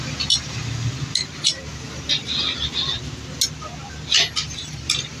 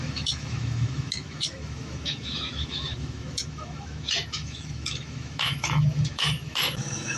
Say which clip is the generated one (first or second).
second